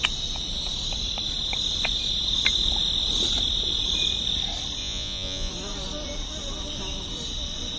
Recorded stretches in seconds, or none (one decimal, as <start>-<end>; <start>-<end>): 0.0-4.8; 5.5-7.8

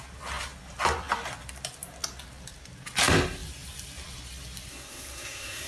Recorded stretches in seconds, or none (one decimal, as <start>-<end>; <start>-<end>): 0.0-4.7

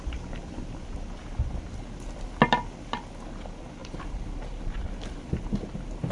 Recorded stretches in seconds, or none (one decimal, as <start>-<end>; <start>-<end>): 0.0-3.8; 4.3-6.1